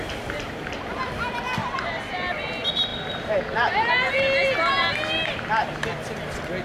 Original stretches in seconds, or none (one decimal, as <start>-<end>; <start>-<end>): 0.0-1.6; 2.5-2.9; 3.9-6.6